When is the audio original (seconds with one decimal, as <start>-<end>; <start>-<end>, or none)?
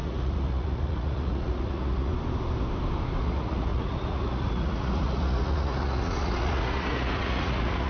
2.1-3.2